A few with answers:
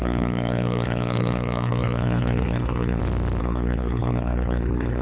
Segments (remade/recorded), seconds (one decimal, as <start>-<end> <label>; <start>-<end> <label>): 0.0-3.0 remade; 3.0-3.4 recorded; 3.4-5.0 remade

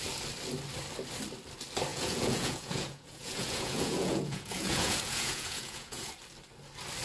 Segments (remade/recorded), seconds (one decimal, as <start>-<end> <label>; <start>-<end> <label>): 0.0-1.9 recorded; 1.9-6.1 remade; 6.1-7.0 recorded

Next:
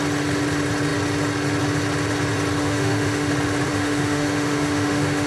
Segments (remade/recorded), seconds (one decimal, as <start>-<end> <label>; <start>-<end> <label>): 0.0-2.6 recorded; 2.6-3.3 remade; 3.3-3.7 recorded; 3.7-5.3 remade

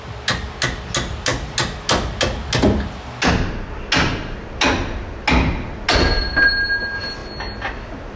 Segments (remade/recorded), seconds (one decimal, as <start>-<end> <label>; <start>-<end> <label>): 0.0-8.2 recorded

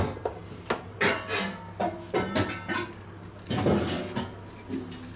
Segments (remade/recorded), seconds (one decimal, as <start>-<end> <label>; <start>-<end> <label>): 0.0-5.2 recorded

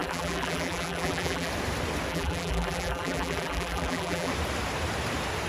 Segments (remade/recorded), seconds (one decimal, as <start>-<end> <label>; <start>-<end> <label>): 0.0-1.5 remade; 1.5-2.1 recorded; 2.1-4.3 remade; 4.3-5.5 recorded